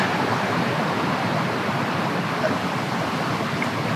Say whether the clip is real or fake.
real